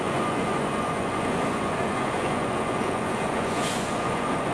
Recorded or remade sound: remade